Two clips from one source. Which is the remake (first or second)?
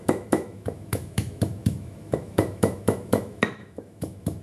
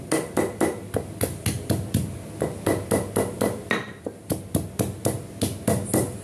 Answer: first